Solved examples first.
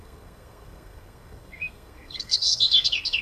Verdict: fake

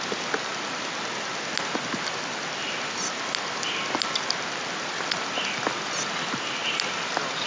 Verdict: real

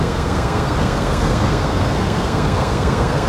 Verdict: fake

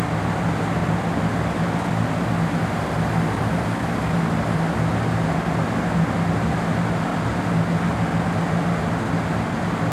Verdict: real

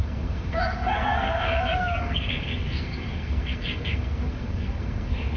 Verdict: fake